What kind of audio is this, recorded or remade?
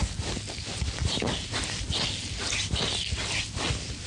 recorded